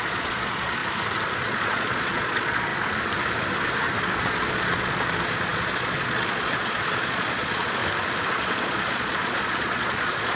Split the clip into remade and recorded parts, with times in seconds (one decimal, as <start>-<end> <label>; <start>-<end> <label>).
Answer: 0.0-0.8 remade; 0.8-1.4 recorded; 1.4-2.7 remade; 2.7-4.0 recorded; 4.0-7.8 remade; 7.8-8.3 recorded; 8.3-10.4 remade